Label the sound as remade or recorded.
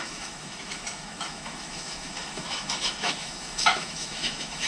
remade